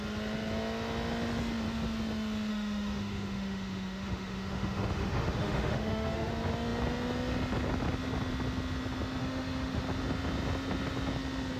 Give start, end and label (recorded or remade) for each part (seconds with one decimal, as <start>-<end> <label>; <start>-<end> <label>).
0.0-2.5 recorded; 2.5-6.3 remade; 6.3-9.2 recorded; 9.2-9.8 remade; 9.8-11.6 recorded